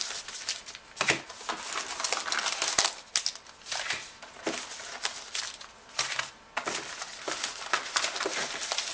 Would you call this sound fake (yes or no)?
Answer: no